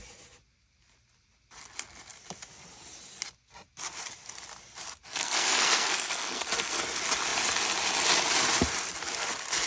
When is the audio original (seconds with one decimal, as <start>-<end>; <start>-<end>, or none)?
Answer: 0.0-5.2; 6.8-9.7